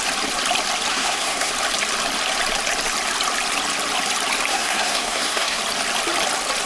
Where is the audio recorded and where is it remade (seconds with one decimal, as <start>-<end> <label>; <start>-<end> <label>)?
0.0-0.9 recorded; 0.9-1.5 remade; 1.5-4.5 recorded; 4.5-5.6 remade; 5.6-6.7 recorded